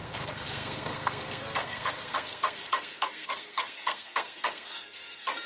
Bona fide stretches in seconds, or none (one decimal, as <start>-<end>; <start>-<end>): none